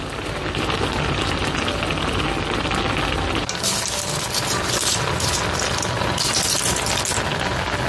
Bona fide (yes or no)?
yes